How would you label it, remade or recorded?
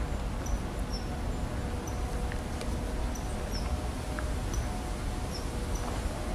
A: recorded